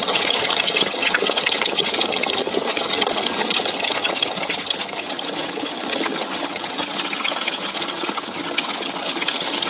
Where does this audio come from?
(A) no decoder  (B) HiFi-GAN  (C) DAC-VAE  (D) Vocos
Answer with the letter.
B